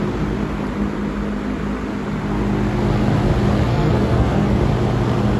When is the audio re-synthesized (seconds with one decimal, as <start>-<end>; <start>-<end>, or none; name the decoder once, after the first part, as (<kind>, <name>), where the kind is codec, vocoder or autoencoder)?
3.7-4.6 (codec, SNAC)